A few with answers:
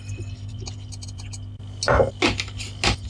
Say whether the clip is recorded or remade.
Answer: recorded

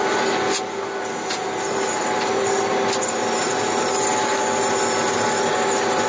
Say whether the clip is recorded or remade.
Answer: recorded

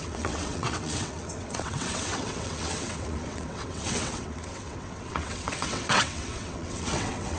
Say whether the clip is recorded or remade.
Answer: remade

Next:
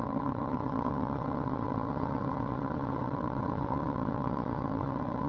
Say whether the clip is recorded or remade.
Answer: remade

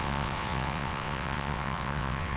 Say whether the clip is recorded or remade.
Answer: remade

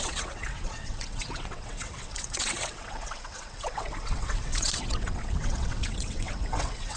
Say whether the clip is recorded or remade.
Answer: remade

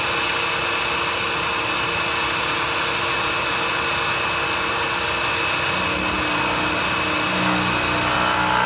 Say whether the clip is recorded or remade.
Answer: recorded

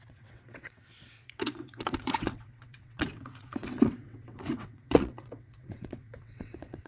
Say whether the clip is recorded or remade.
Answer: remade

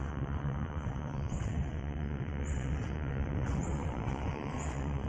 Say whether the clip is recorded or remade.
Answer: remade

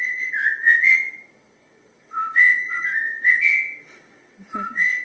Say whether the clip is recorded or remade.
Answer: remade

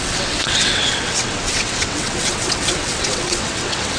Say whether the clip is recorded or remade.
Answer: remade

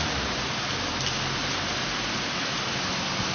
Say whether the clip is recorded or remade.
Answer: recorded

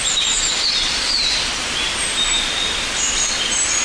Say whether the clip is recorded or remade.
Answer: recorded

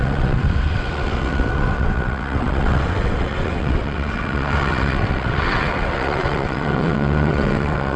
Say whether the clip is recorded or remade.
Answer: remade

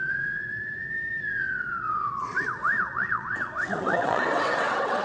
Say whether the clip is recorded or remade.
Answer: remade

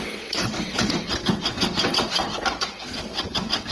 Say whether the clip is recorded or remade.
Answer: remade